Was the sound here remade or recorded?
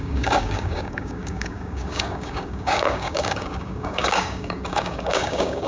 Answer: remade